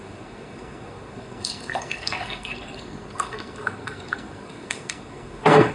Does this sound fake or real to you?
fake